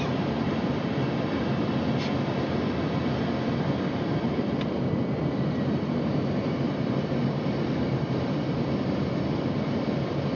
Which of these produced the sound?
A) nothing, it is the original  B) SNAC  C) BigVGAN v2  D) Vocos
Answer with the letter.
C